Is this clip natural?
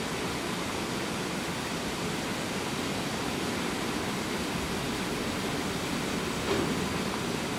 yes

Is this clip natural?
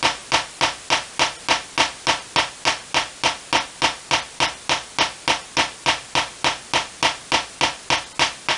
yes